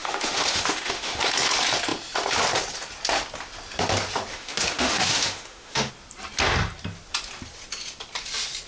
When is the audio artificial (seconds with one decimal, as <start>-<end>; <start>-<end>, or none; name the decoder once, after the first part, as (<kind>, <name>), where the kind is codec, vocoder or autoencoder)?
0.0-1.2 (autoencoder, DAC-VAE); 4.3-5.9